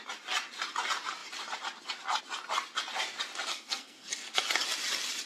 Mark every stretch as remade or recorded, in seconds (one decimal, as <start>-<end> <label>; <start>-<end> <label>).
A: 0.0-3.5 recorded; 3.5-4.1 remade; 4.1-5.3 recorded